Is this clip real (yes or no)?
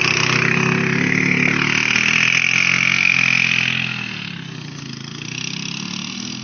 yes